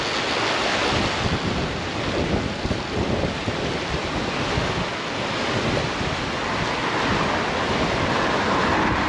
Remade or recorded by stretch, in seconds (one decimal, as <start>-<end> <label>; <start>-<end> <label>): 0.0-9.1 recorded